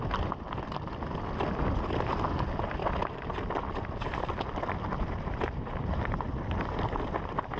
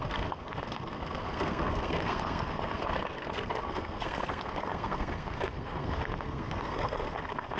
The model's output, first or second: second